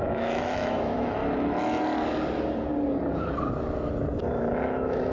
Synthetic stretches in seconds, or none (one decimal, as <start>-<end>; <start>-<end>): 0.0-1.2; 4.3-5.1